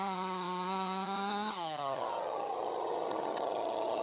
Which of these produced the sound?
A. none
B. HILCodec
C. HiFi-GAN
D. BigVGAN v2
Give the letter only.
C